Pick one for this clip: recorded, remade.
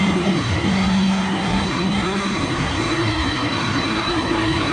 remade